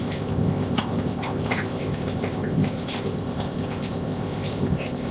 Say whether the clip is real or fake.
fake